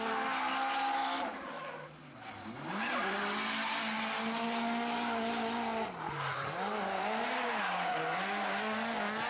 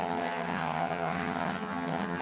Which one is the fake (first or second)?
second